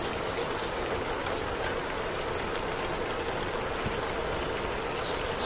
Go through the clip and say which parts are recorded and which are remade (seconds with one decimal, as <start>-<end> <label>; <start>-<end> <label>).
0.0-5.5 recorded

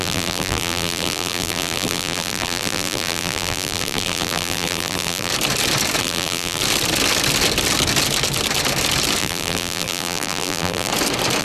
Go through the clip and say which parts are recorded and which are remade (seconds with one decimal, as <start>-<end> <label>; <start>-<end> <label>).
0.0-5.3 remade; 5.3-6.0 recorded; 6.0-6.6 remade; 6.6-9.2 recorded; 9.2-10.9 remade; 10.9-11.4 recorded

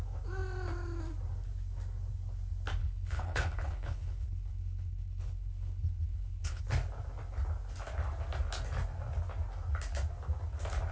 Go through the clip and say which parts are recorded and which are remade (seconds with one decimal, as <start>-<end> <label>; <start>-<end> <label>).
0.0-2.8 recorded; 2.8-6.6 remade; 6.6-10.9 recorded